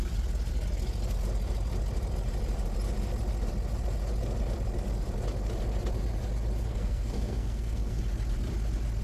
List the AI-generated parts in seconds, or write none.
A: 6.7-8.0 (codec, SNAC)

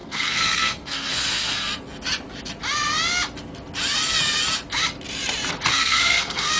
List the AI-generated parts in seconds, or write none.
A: 0.0-1.7 (codec, SNAC); 5.7-6.6

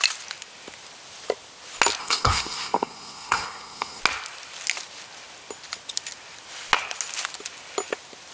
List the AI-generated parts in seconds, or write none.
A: 2.0-4.0 (codec, SNAC)

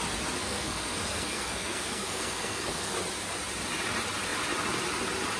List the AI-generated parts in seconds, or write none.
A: 0.4-2.9 (codec, SNAC)

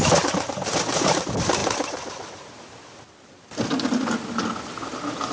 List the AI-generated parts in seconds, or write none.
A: none

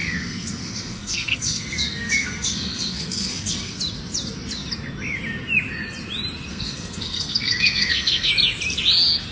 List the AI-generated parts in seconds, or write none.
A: 0.0-3.8 (codec, SNAC); 6.5-8.3

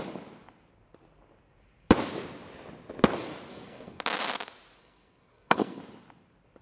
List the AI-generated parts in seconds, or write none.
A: 3.5-4.0 (codec, SNAC); 4.8-5.8

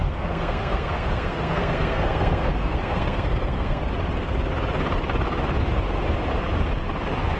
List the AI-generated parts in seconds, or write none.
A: 0.0-3.8 (codec, SNAC)